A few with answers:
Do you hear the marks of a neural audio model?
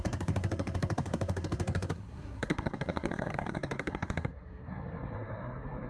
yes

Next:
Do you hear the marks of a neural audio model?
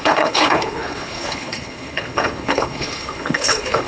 yes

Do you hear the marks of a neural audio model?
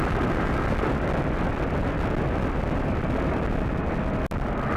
no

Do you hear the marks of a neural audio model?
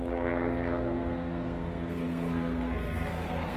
yes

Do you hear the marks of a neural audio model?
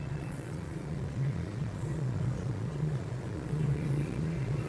yes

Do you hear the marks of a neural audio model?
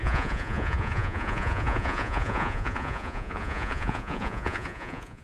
yes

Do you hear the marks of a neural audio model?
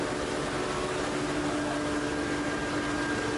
no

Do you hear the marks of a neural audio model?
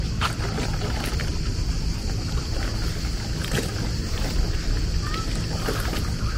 no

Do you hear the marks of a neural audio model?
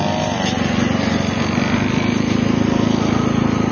no